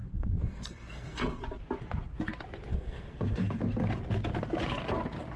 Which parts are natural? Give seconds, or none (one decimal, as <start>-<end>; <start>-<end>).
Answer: 1.4-2.7; 3.6-5.4

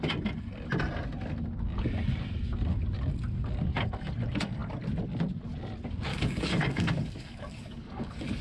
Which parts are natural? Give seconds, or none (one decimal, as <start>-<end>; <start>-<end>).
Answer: 0.0-6.1